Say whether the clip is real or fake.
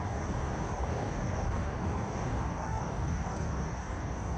fake